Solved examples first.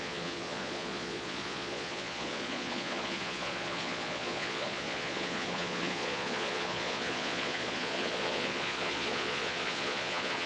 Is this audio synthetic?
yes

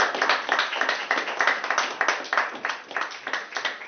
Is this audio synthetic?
no